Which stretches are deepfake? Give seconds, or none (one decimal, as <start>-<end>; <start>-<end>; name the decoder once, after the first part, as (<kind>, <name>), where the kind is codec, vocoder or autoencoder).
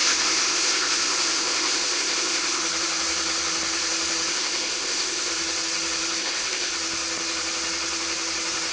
0.0-2.6 (codec, ZipCodec); 4.3-5.3; 6.2-6.7